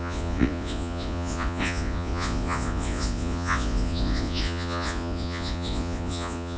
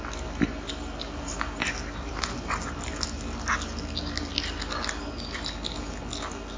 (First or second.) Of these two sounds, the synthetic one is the first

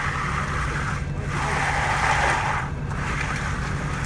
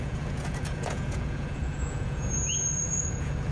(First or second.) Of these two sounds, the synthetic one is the second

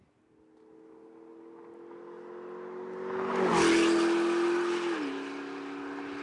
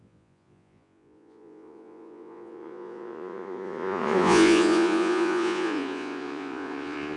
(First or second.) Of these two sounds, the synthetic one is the second